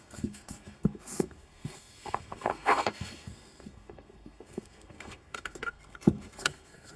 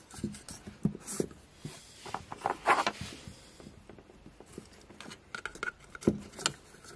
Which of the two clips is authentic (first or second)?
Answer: second